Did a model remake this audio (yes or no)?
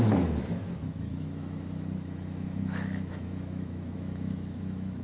yes